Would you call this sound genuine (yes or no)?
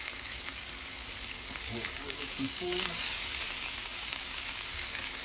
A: no